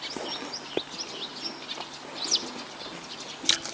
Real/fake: real